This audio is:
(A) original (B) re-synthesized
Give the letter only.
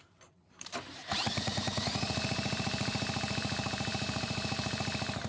B